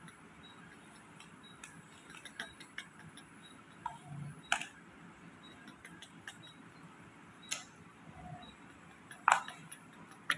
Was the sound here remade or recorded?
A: recorded